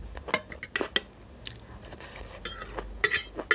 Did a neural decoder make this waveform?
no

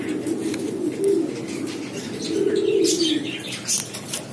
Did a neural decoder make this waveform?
no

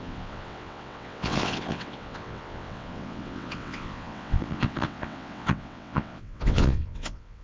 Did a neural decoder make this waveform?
yes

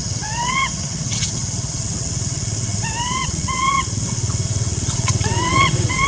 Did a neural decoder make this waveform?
yes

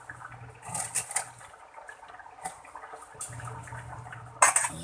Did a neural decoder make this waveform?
no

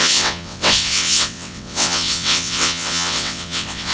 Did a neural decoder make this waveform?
yes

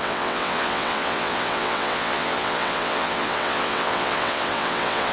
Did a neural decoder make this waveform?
yes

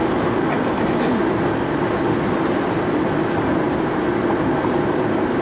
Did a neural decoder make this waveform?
no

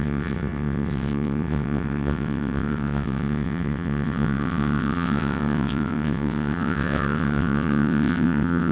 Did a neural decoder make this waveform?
yes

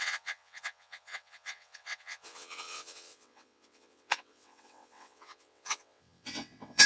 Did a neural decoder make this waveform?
yes